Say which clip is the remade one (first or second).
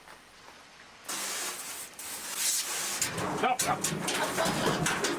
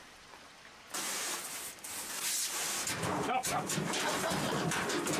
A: second